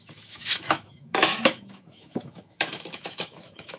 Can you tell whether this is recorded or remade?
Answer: remade